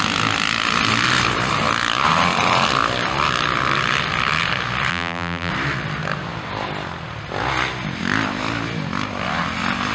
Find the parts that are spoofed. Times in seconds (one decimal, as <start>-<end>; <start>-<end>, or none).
4.9-5.5